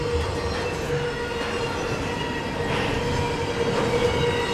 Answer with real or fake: real